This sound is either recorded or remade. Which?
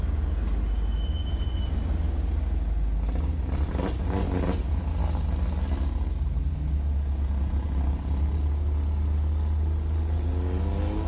recorded